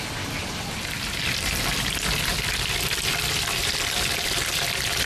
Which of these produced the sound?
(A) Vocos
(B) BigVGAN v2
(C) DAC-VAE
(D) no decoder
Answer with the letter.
B